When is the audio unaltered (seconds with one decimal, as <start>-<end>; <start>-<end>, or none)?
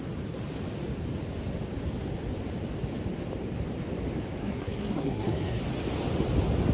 0.0-4.4; 5.6-6.7